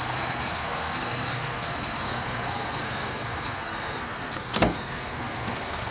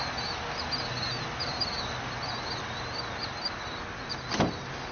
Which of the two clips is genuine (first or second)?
second